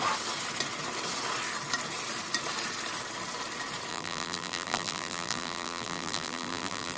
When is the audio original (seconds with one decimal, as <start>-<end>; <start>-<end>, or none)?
0.0-3.9